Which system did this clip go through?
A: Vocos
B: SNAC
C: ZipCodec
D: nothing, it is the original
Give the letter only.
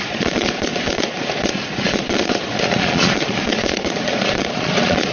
A